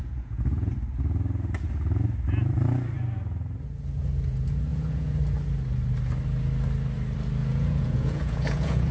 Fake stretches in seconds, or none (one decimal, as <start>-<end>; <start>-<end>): 0.0-0.7; 4.7-5.2; 7.4-8.9